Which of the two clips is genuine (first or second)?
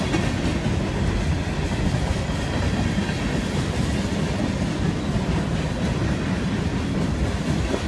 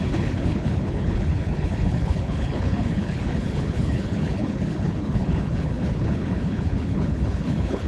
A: first